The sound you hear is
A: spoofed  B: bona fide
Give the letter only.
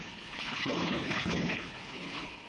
A